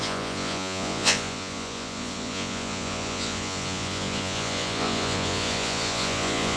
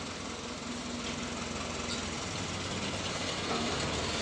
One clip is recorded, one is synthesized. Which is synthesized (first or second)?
first